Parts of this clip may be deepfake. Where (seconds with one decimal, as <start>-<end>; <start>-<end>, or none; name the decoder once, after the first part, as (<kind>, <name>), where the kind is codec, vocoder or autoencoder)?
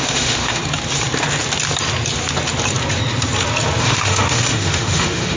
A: 0.0-0.6 (autoencoder, DAC-VAE); 3.8-5.4